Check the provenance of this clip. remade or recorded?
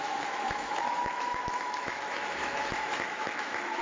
remade